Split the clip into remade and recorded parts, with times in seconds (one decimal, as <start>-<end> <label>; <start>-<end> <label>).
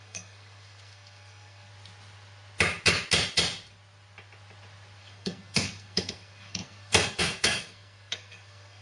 0.0-1.7 remade; 1.7-5.0 recorded; 5.0-8.8 remade